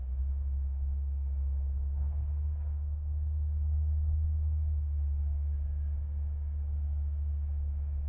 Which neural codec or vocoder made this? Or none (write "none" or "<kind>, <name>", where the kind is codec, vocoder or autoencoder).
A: codec, SNAC